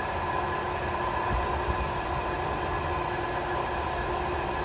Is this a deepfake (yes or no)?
no